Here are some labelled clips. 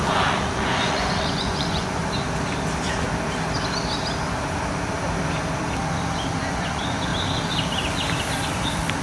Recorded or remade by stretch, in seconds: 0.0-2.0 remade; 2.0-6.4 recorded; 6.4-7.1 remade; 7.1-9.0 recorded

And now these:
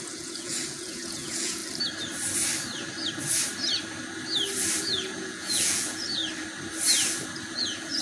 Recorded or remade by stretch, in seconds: 0.0-1.6 remade; 1.6-4.8 recorded; 4.8-6.2 remade; 6.2-7.5 recorded; 7.5-8.0 remade